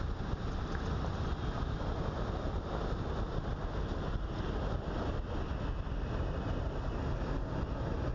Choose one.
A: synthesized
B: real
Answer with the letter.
B